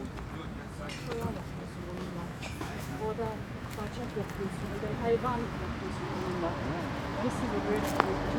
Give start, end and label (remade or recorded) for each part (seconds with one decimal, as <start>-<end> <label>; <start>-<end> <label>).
0.0-1.7 recorded; 1.7-3.9 remade; 3.9-4.9 recorded; 4.9-5.7 remade; 5.7-8.4 recorded